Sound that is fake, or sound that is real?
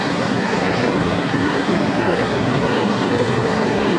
fake